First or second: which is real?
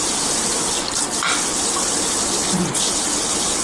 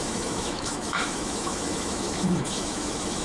first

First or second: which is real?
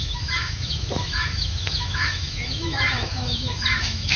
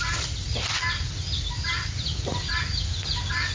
second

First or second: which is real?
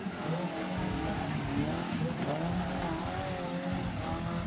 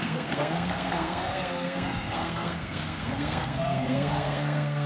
first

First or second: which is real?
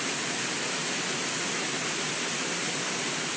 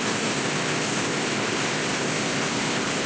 first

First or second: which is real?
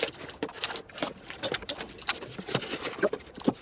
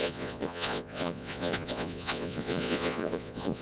first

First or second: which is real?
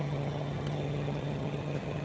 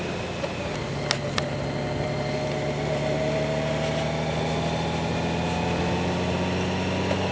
second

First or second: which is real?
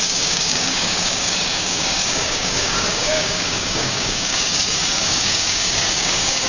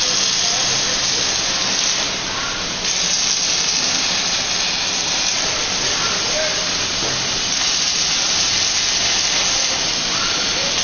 second